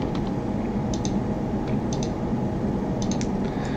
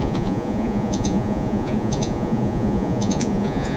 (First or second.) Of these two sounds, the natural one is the first